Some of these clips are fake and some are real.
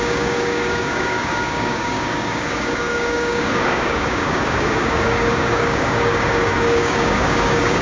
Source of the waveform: fake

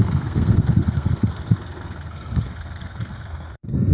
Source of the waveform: fake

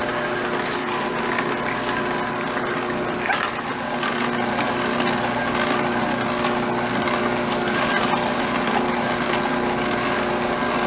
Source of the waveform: real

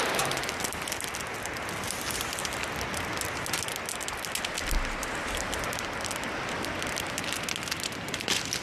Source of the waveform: real